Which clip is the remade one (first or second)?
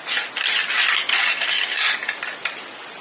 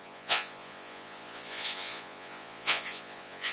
second